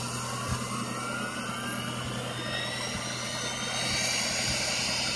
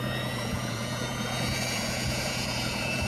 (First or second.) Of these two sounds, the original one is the first